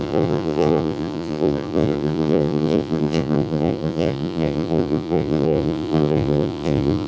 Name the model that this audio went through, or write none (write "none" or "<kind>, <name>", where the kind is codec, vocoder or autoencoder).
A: vocoder, Vocos